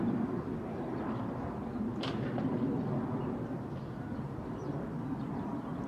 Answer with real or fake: fake